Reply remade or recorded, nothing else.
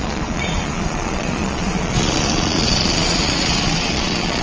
remade